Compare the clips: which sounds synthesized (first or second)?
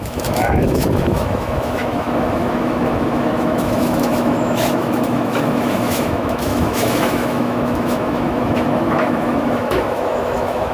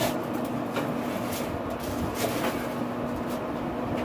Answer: first